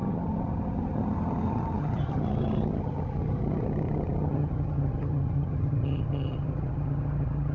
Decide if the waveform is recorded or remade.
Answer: remade